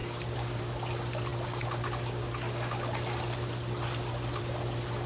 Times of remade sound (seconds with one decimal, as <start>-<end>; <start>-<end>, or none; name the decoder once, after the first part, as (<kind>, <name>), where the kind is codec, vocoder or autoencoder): 0.0-0.6 (codec, DAC)